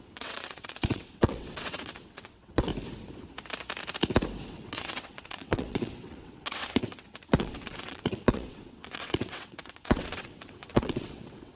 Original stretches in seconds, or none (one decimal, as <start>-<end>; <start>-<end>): 2.7-4.5